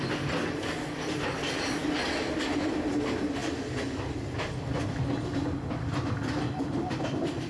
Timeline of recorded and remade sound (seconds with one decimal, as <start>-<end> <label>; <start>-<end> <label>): 0.0-7.5 recorded